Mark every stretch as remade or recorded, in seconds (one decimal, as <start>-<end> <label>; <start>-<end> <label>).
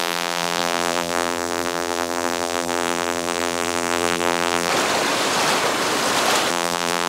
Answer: 0.0-4.7 remade; 4.7-6.5 recorded; 6.5-7.1 remade